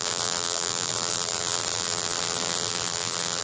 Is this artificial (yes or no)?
yes